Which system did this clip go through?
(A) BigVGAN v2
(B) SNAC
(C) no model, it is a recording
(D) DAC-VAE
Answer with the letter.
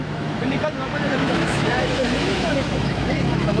D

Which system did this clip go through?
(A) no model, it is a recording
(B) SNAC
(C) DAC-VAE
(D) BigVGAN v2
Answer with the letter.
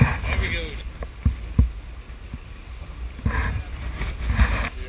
A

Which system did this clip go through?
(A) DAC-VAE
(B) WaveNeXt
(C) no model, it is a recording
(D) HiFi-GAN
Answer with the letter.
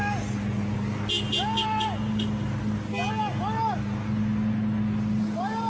C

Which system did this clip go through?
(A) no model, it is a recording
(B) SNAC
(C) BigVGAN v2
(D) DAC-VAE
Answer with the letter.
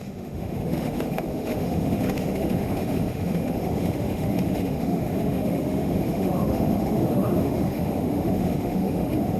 D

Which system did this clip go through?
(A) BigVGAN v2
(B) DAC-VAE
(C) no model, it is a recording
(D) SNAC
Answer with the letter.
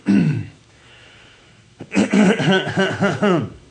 B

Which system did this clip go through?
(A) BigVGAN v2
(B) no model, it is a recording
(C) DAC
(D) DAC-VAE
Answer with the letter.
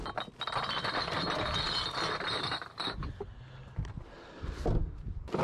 B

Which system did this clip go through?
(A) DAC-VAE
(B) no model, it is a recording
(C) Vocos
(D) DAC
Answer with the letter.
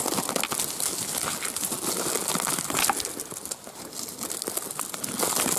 B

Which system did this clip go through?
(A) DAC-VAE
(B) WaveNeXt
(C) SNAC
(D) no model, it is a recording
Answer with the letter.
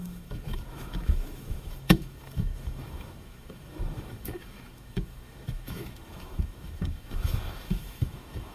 A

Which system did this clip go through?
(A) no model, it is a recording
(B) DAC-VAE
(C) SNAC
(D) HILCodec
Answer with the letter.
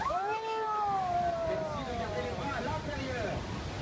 A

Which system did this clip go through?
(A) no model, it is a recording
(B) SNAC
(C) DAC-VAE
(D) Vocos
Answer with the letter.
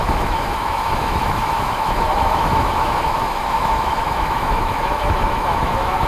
C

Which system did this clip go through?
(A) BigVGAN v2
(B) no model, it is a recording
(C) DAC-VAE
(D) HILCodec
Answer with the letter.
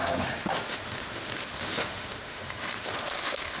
C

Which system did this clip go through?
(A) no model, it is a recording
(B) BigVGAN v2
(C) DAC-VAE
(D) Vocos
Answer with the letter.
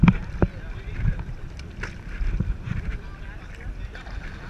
A